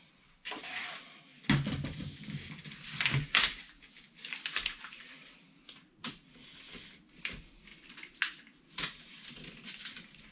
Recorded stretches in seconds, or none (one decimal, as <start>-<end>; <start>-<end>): 0.0-10.3